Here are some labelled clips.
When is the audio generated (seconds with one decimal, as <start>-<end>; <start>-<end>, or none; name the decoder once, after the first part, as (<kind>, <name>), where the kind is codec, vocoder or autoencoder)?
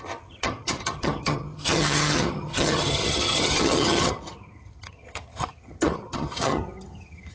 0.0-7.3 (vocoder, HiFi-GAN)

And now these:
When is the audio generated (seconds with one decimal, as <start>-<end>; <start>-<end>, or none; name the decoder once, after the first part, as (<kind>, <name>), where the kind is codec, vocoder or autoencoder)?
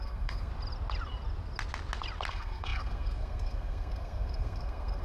0.0-0.5 (codec, SNAC); 2.3-5.0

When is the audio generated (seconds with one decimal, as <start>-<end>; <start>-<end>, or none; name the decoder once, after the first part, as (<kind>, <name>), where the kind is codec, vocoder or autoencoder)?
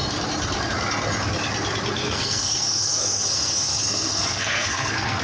2.0-5.2 (codec, SNAC)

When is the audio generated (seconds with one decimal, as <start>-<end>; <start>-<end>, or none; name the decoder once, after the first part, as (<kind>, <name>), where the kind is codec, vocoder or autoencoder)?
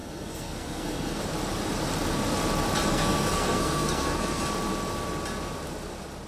0.0-1.2 (codec, SNAC); 2.9-4.4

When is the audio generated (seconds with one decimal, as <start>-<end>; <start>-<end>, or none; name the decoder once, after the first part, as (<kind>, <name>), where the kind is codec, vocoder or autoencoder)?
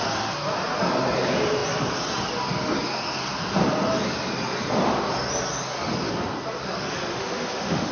7.1-7.9 (autoencoder, DAC-VAE)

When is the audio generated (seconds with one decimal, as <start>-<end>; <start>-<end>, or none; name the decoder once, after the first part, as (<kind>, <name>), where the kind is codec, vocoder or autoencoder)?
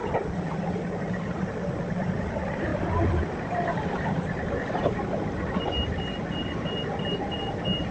none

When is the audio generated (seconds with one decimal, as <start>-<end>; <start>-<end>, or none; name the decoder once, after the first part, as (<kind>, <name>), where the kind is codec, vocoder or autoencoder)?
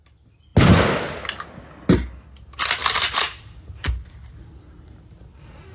2.8-3.9 (vocoder, BigVGAN v2)